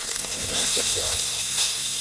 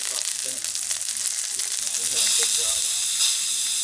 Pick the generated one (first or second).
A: first